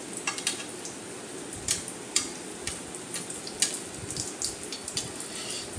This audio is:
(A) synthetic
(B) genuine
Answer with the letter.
B